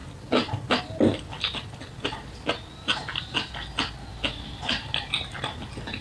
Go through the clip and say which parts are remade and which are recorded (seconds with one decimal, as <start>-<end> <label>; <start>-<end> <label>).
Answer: 0.0-6.0 recorded